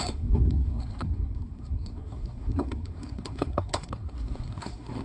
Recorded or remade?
remade